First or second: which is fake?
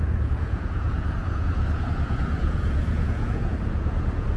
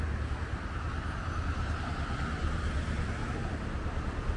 first